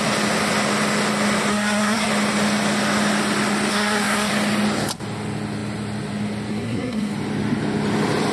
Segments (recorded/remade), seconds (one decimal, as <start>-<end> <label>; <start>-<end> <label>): 0.0-1.5 recorded; 1.5-2.1 remade; 2.1-3.7 recorded; 3.7-4.3 remade; 4.3-6.5 recorded; 6.5-7.1 remade; 7.1-8.3 recorded